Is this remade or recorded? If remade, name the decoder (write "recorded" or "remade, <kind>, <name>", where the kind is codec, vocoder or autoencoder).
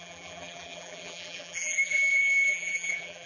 remade, vocoder, BigVGAN v2